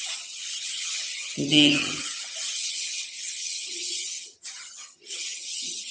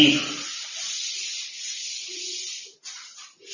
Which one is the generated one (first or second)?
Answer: first